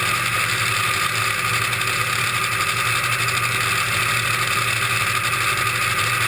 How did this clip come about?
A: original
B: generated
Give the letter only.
A